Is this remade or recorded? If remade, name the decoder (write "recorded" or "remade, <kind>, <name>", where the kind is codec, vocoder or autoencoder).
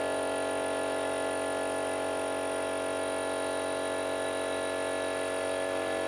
recorded